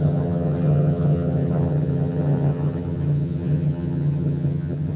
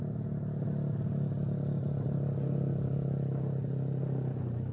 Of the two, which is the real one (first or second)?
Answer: second